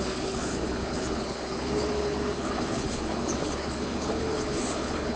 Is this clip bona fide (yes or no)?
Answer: no